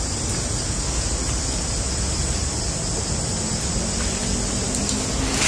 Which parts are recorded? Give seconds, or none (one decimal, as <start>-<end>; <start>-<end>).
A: 0.0-5.5